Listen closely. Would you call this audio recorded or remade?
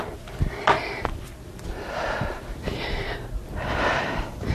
recorded